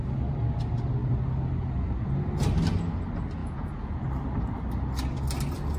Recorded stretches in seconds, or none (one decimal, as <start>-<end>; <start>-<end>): 0.0-3.4; 4.0-5.8